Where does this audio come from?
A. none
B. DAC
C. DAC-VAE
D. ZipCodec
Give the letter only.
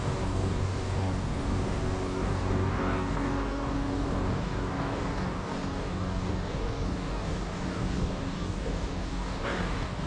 B